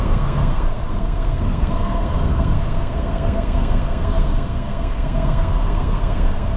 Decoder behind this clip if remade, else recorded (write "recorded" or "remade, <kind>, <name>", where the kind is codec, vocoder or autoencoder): remade, codec, SNAC